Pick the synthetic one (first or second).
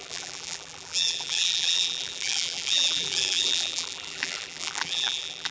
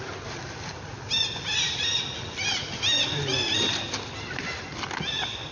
first